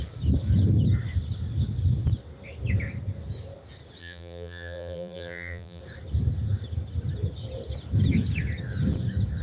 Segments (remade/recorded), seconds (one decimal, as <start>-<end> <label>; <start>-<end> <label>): 0.0-4.0 recorded; 4.0-5.8 remade; 5.8-9.4 recorded